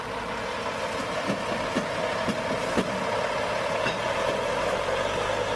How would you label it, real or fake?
real